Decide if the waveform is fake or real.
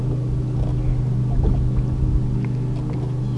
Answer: real